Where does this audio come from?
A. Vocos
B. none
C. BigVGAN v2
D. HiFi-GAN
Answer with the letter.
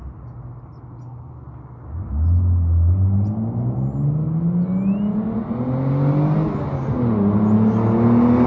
B